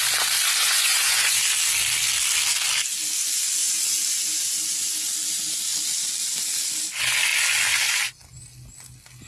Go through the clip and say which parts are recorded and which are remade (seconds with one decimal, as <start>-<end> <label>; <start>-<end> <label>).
0.0-0.6 recorded; 0.6-1.4 remade; 1.4-9.3 recorded